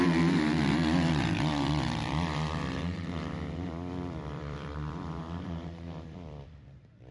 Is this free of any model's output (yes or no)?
no